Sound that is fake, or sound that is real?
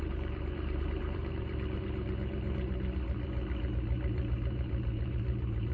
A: fake